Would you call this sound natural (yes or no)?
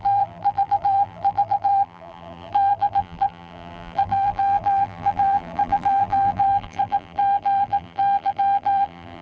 no